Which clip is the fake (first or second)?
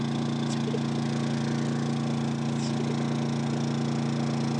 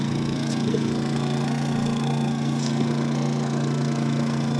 second